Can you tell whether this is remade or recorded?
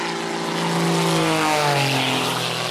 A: recorded